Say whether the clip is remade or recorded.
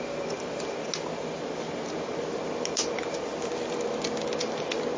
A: recorded